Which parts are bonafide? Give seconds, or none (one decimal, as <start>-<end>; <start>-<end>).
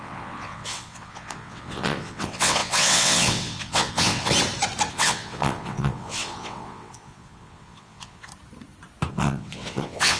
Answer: 4.3-4.9; 8.3-9.1